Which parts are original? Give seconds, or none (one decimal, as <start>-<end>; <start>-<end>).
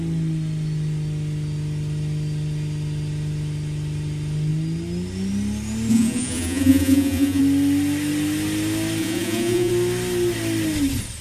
0.0-5.9; 7.4-9.0; 9.7-11.2